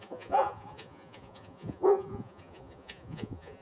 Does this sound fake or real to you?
fake